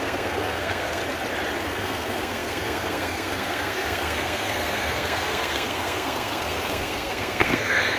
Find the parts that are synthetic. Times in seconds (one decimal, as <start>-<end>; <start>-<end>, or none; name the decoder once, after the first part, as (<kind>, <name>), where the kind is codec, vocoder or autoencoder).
0.0-1.0 (codec, SNAC); 1.7-8.0